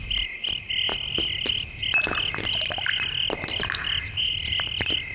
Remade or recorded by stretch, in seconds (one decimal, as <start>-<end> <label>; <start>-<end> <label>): 0.0-5.1 recorded